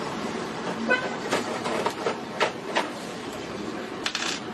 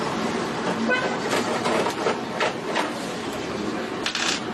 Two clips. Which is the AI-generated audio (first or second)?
first